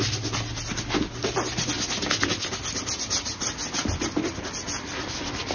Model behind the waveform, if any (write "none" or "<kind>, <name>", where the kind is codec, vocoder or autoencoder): none